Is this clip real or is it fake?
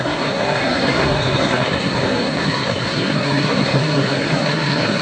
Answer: fake